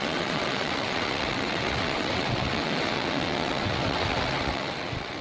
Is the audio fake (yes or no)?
yes